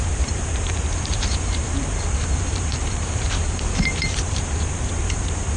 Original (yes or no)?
no